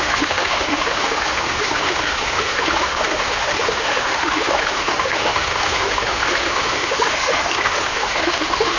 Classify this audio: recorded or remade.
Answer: remade